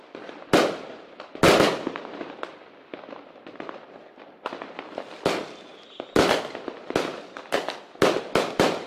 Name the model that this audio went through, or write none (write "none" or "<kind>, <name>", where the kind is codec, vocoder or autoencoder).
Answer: none